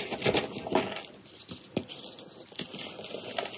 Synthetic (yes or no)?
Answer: no